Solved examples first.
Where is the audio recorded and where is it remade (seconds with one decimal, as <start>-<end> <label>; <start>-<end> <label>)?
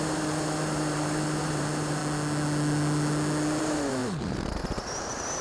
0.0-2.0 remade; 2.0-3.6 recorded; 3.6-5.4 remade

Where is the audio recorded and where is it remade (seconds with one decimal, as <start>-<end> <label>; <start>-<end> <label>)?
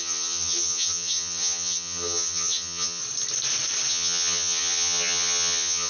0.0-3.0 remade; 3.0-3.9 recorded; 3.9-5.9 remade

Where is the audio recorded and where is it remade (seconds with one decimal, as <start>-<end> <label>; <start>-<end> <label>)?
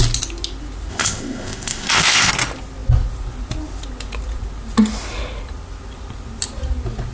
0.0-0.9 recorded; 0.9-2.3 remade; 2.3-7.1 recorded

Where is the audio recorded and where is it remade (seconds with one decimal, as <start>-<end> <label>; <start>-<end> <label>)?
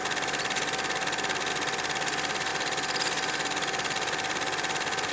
0.0-5.1 recorded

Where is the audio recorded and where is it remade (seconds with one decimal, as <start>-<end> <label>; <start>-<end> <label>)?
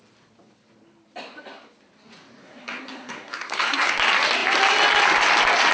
0.0-2.4 recorded; 2.4-3.9 remade; 3.9-5.7 recorded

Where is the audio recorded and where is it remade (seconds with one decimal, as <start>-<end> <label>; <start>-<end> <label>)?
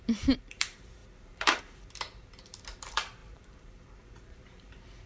0.0-5.1 remade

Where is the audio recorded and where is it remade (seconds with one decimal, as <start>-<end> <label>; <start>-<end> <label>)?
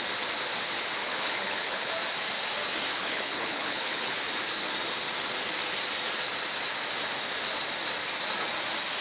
0.0-1.0 recorded; 1.0-1.9 remade; 1.9-2.9 recorded; 2.9-4.2 remade; 4.2-9.0 recorded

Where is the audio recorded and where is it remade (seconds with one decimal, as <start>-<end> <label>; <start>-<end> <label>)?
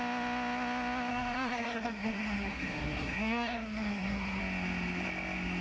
0.0-1.1 recorded; 1.1-4.4 remade; 4.4-5.6 recorded